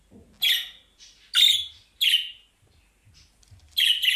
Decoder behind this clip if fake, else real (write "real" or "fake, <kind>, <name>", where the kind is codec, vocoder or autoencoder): real